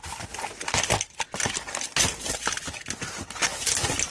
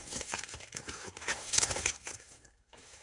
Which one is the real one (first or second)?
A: first